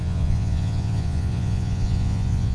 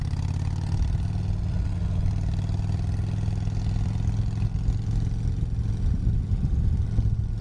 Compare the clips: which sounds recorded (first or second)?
second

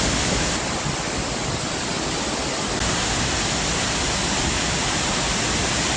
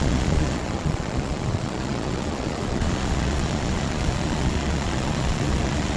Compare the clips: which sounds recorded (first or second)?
first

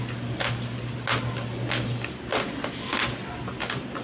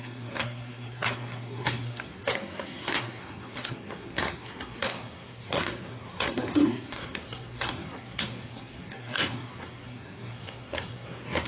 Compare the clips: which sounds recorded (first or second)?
first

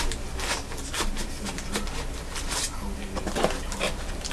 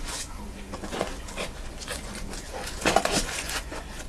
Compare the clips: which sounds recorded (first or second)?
first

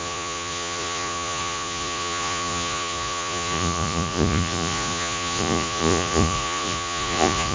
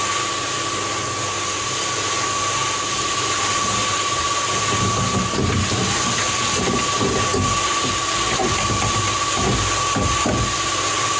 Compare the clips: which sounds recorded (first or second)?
second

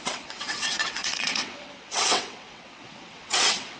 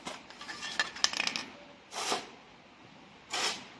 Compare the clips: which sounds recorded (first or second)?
second